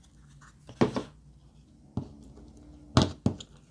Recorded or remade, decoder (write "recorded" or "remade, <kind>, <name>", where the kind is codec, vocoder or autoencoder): recorded